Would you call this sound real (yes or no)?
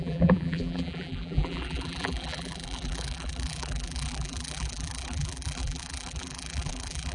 no